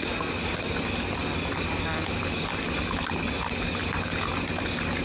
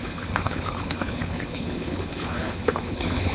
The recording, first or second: first